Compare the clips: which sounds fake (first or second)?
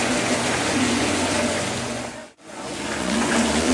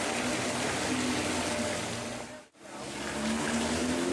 first